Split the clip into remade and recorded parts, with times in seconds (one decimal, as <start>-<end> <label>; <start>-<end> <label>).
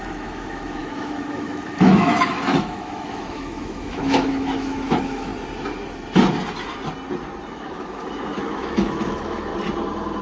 0.0-5.3 remade; 5.3-7.5 recorded; 7.5-9.5 remade; 9.5-10.2 recorded